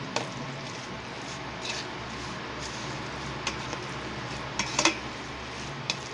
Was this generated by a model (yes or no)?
no